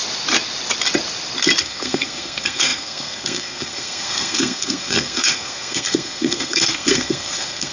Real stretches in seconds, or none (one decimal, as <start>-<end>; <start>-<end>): 0.0-1.6